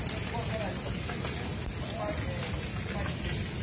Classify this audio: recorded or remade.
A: recorded